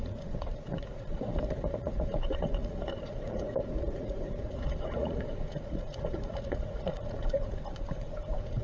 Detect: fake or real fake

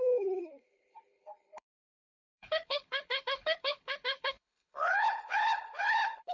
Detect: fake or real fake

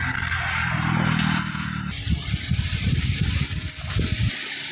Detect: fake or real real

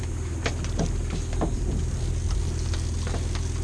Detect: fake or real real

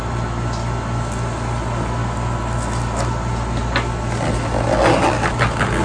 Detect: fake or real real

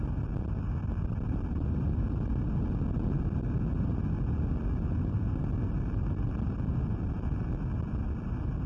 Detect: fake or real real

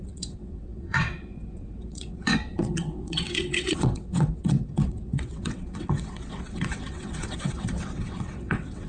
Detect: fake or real fake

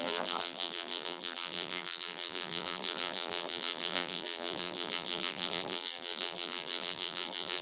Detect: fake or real fake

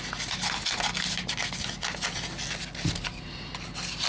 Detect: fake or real real